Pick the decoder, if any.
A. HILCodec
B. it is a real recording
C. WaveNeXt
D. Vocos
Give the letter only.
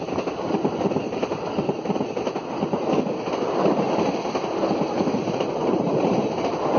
B